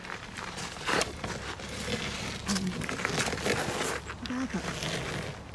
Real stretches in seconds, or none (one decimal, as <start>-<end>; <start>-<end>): 1.2-2.4; 3.0-5.5